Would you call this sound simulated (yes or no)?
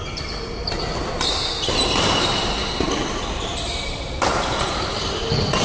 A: no